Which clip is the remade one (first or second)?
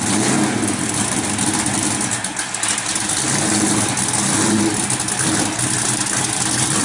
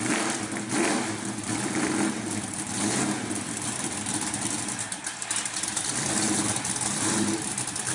second